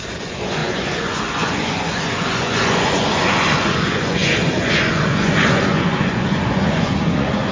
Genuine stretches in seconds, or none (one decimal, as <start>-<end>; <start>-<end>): none